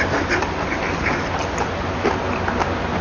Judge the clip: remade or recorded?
recorded